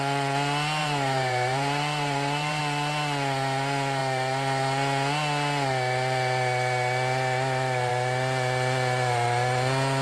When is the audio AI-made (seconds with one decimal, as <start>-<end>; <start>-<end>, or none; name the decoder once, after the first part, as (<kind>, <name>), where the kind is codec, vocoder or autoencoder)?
0.8-2.6 (vocoder, BigVGAN v2)